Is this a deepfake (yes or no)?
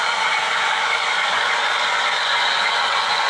yes